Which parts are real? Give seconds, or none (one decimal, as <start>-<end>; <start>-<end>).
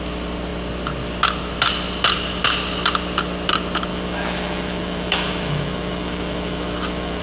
0.0-3.9